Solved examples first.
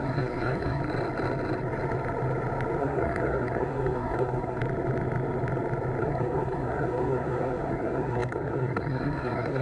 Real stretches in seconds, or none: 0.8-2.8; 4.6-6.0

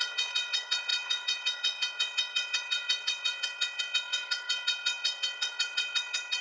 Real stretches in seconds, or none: none

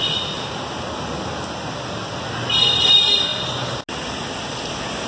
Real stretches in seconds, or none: 0.0-5.1

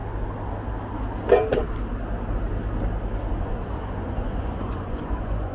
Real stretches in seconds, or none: 0.0-3.3

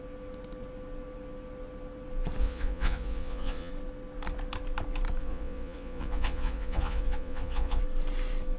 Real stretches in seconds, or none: 0.0-2.4; 3.7-5.2; 7.8-8.6

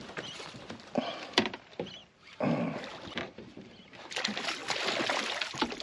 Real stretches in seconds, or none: 4.6-5.8

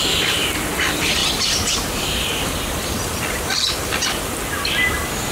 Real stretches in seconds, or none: 0.0-5.3